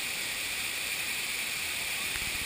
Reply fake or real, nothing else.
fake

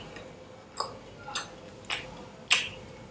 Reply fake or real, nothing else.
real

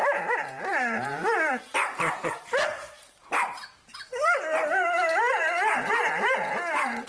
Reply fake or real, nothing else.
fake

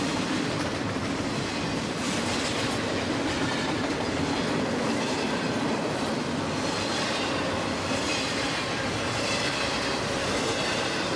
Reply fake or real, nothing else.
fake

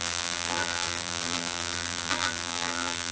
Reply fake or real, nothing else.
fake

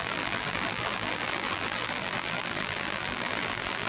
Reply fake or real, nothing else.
fake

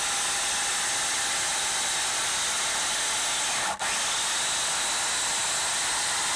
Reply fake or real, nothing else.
real